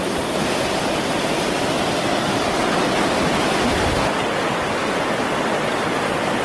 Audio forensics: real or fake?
real